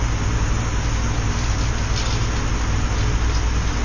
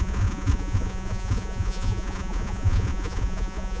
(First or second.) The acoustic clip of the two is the first